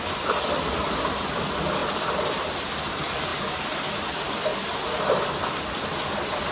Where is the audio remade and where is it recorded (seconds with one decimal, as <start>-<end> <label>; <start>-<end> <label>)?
0.0-3.3 recorded; 3.3-3.9 remade; 3.9-4.5 recorded; 4.5-5.7 remade; 5.7-6.5 recorded